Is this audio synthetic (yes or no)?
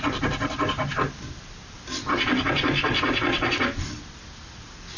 no